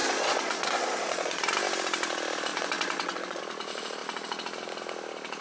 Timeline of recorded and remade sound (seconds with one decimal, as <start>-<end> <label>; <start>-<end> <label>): 0.0-1.4 remade; 1.4-2.5 recorded; 2.5-3.4 remade; 3.4-5.4 recorded